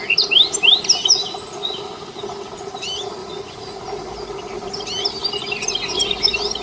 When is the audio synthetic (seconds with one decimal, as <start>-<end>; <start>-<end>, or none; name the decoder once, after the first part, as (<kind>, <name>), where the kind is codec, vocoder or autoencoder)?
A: 3.2-3.8 (vocoder, Vocos)